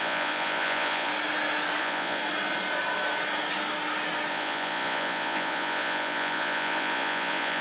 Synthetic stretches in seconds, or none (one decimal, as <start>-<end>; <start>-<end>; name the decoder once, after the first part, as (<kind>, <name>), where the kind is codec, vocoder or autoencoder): 0.0-1.1 (vocoder, Vocos); 1.8-2.2; 4.3-7.6